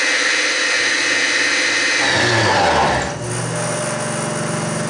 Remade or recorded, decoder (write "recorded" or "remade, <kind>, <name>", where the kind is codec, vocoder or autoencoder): recorded